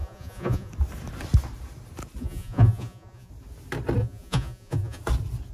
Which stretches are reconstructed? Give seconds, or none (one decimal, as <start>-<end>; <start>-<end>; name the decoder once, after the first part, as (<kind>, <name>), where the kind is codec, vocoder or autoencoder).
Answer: 0.0-0.7 (vocoder, Vocos); 2.2-3.3; 4.0-5.0